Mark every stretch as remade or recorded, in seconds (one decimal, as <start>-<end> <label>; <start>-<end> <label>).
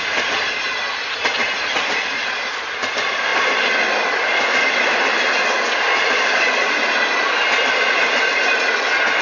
0.0-3.3 recorded; 3.3-4.2 remade; 4.2-9.2 recorded